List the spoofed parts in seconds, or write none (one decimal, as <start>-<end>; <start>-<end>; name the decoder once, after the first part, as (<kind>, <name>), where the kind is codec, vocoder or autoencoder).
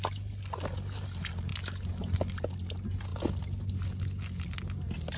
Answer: none